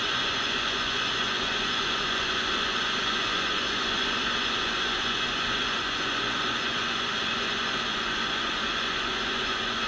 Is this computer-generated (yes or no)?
yes